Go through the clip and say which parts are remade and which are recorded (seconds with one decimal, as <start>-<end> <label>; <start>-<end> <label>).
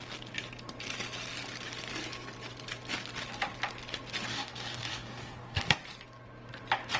0.0-4.3 recorded; 4.3-5.6 remade; 5.6-7.0 recorded